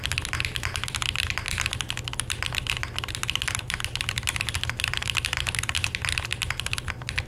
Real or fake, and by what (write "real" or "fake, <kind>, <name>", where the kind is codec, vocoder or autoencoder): real